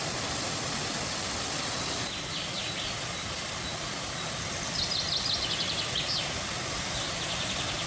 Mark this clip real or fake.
real